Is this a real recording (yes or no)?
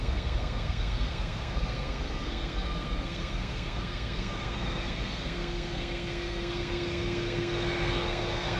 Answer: no